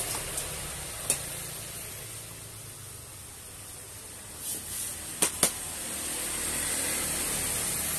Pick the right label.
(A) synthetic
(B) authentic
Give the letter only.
B